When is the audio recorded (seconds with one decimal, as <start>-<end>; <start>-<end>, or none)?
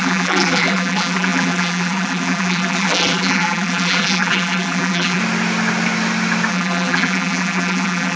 5.2-6.5